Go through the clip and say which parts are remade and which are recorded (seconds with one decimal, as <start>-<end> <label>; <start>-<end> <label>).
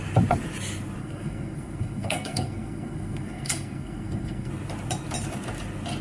0.0-1.0 recorded; 1.0-4.5 remade; 4.5-6.0 recorded